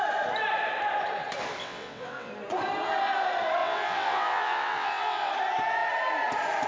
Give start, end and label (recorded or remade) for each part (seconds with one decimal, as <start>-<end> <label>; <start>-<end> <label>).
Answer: 0.0-1.6 recorded; 1.6-2.3 remade; 2.3-3.6 recorded; 3.6-5.3 remade; 5.3-6.7 recorded